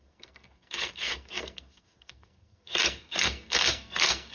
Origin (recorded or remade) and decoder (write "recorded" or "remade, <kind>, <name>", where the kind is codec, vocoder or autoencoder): remade, codec, SNAC